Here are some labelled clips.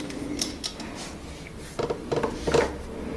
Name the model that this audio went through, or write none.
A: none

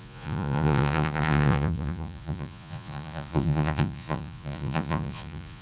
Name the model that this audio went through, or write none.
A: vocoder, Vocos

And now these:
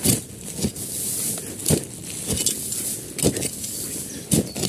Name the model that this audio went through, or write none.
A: none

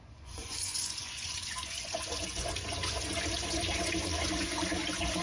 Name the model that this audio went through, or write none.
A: vocoder, Vocos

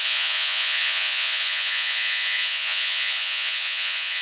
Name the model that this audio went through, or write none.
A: vocoder, Vocos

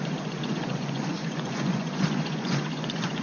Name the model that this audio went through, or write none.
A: vocoder, Vocos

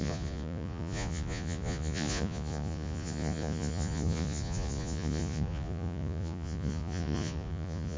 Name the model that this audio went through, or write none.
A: vocoder, Vocos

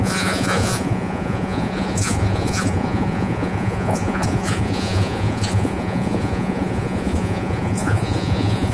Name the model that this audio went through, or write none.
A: vocoder, Vocos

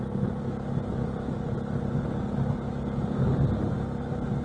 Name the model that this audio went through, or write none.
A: none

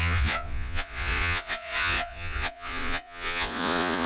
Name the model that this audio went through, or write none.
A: vocoder, Vocos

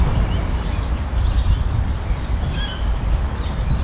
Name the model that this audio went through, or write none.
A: none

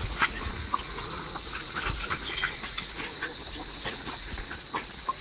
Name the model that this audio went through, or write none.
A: vocoder, Vocos